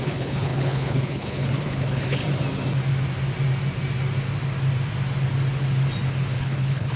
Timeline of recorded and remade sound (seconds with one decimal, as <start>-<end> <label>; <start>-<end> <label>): 0.0-2.2 remade; 2.2-6.4 recorded; 6.4-7.0 remade